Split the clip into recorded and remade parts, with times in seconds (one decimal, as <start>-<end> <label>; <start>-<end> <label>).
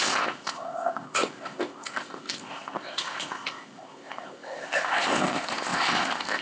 0.0-6.4 remade